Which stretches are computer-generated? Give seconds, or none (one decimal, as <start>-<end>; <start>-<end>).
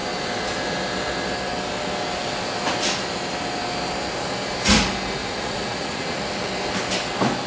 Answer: 5.2-6.5